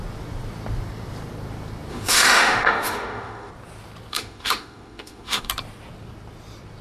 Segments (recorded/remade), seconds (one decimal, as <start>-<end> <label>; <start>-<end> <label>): 0.0-1.9 recorded; 1.9-3.5 remade; 3.5-4.1 recorded; 4.1-5.5 remade; 5.5-6.8 recorded